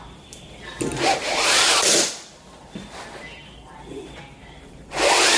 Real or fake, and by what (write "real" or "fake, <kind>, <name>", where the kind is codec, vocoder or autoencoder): real